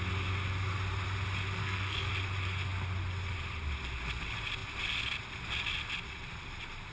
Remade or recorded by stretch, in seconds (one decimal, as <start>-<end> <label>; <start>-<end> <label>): 0.0-1.6 recorded; 1.6-2.1 remade; 2.1-6.9 recorded